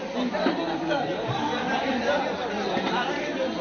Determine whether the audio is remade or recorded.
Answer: recorded